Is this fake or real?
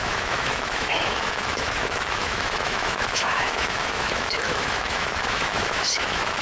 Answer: fake